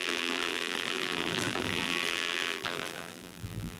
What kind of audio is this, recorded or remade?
remade